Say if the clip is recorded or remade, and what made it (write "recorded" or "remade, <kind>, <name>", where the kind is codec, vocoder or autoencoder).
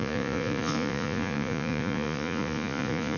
remade, vocoder, Vocos